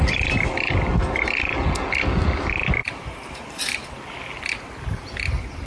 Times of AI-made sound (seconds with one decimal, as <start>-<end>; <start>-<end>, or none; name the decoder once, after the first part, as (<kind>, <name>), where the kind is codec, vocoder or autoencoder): none